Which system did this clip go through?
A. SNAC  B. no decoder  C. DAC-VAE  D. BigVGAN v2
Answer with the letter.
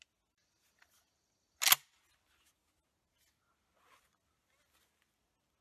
B